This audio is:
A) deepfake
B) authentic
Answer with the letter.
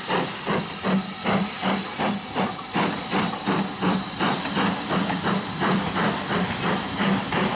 B